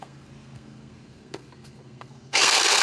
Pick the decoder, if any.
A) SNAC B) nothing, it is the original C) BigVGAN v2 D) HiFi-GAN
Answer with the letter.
A